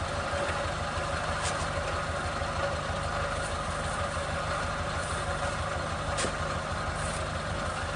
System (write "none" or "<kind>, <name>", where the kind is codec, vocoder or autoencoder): none